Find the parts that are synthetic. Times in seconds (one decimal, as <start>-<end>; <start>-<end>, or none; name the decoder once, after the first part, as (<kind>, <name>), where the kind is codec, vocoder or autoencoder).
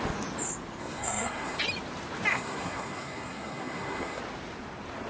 0.8-1.6 (codec, SNAC); 2.3-4.2